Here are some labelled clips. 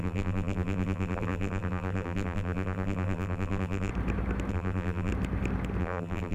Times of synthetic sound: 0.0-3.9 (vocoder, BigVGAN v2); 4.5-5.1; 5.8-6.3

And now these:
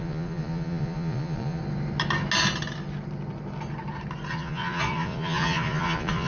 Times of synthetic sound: 0.0-1.6 (vocoder, Vocos); 4.3-6.3

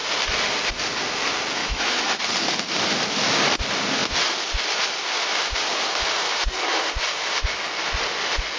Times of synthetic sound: 1.6-2.2 (autoencoder, DAC-VAE)

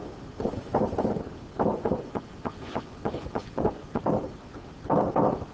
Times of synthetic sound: 1.7-4.0 (vocoder, Vocos)

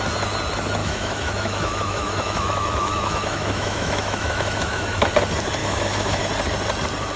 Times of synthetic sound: 0.8-5.1 (autoencoder, DAC-VAE); 5.6-6.2

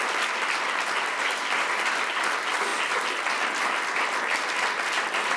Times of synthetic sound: none

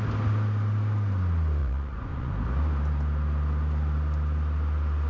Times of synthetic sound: 1.6-2.3 (vocoder, Vocos)